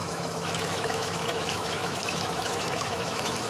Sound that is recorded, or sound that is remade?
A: remade